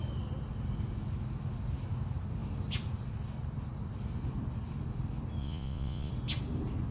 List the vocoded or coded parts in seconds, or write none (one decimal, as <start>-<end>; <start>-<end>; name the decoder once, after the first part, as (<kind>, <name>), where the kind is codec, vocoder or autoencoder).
5.4-6.1 (vocoder, Vocos)